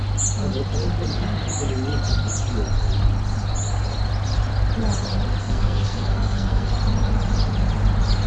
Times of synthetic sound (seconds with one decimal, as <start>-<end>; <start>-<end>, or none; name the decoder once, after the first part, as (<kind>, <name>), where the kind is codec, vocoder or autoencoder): 5.4-6.7 (codec, SNAC)